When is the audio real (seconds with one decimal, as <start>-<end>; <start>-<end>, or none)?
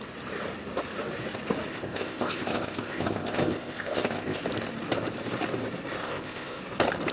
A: 0.0-1.7; 4.4-6.0; 6.6-7.1